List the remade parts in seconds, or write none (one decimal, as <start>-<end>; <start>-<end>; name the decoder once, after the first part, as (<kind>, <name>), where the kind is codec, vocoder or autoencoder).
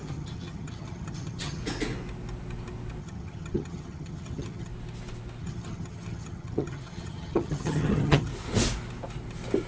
0.0-1.6 (vocoder, HiFi-GAN); 3.0-4.7; 5.4-8.3